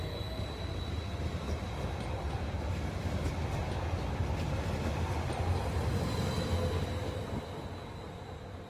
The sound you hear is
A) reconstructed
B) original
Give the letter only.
B